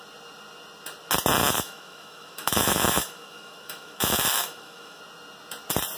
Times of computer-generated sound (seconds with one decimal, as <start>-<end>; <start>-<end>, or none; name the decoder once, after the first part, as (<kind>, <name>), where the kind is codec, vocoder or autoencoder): 1.4-5.0 (autoencoder, DAC-VAE)